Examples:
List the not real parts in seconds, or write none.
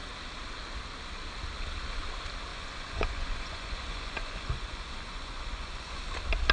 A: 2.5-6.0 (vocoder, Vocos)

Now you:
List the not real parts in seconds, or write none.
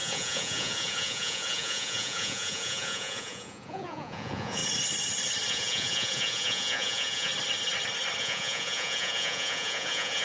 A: 0.0-4.6 (vocoder, Vocos); 5.5-7.3; 8.2-10.2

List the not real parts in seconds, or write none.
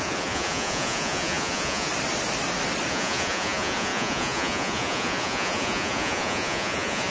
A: 0.0-1.9 (vocoder, Vocos); 2.9-7.1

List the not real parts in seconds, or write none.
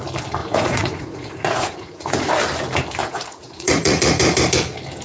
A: 0.4-2.3 (vocoder, Vocos); 3.0-4.2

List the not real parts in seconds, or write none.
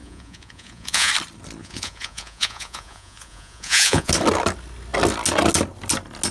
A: 0.0-1.1 (vocoder, Vocos); 1.6-4.1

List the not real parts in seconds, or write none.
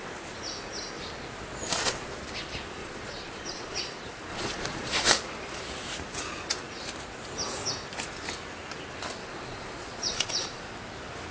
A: 1.5-2.1 (vocoder, Vocos); 2.8-3.8; 4.3-5.1; 9.2-10.6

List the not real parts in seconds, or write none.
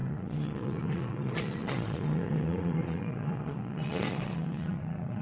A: 0.0-5.2 (vocoder, Vocos)